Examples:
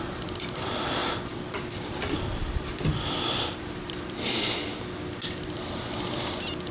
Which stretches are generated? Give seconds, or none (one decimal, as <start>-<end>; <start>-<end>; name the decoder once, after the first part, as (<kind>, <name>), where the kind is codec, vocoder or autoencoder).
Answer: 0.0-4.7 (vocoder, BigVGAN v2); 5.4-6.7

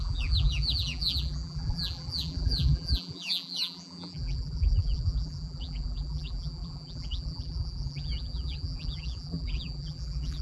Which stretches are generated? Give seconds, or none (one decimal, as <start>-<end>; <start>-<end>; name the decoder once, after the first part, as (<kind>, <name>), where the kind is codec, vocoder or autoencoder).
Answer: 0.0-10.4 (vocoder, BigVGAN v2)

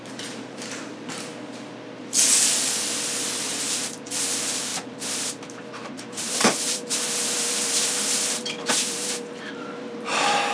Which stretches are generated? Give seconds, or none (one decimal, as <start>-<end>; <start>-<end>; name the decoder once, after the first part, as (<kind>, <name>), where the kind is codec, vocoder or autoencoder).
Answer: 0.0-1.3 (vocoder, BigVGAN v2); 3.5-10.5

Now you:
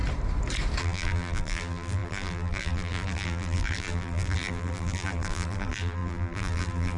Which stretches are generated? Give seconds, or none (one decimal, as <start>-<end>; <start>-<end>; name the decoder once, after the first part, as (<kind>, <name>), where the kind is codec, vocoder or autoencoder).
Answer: 0.8-7.0 (vocoder, BigVGAN v2)

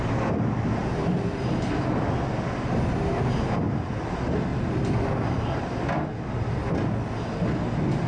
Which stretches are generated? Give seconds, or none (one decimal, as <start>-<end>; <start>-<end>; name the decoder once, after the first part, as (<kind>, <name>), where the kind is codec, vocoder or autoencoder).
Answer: none

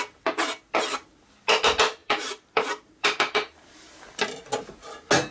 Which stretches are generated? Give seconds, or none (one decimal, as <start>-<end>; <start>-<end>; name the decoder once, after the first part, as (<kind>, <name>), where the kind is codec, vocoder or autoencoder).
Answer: 2.0-4.2 (vocoder, BigVGAN v2)

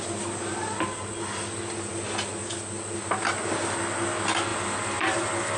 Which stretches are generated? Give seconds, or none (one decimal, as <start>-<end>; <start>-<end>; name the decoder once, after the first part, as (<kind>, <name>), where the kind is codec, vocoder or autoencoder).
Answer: 4.5-5.6 (vocoder, BigVGAN v2)

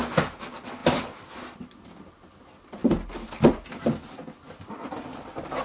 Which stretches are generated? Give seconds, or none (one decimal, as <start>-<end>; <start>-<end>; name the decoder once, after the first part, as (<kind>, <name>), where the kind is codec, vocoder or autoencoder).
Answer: 2.8-3.8 (vocoder, BigVGAN v2)